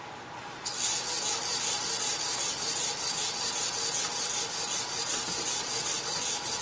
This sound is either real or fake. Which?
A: real